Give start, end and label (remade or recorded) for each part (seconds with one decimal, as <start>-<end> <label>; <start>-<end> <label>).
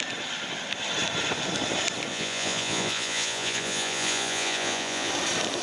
0.0-2.1 recorded; 2.1-5.1 remade; 5.1-5.6 recorded